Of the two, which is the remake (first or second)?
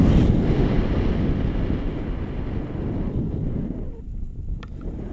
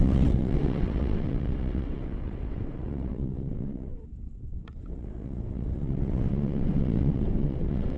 second